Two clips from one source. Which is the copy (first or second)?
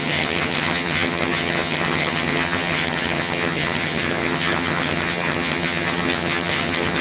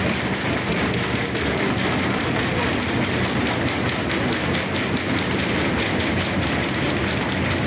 first